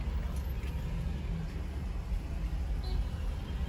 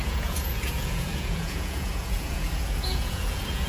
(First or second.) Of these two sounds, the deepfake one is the second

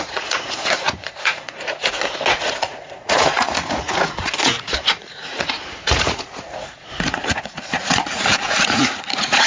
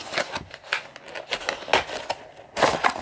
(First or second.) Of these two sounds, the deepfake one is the first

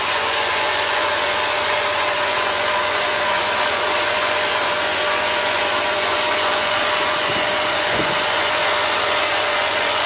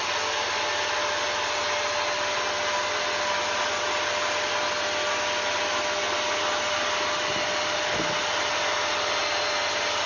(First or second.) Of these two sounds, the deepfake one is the first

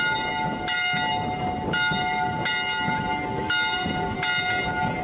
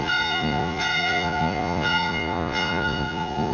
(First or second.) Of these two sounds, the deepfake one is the second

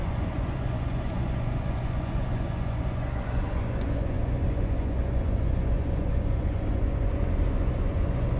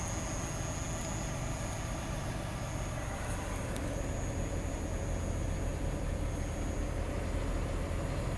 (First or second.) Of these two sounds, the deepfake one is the first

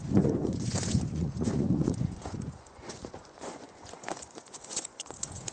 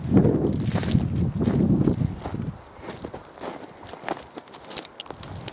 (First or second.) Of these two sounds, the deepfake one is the first